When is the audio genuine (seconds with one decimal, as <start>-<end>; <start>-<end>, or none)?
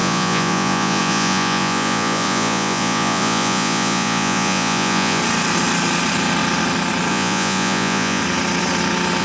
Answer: 5.2-7.1; 8.2-9.2